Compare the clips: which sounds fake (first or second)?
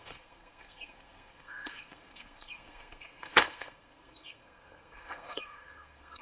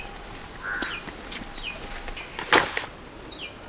first